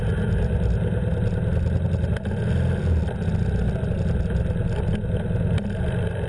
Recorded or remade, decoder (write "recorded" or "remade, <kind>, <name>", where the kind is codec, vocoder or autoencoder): recorded